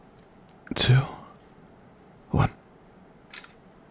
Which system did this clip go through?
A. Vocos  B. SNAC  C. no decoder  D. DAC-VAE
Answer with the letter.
C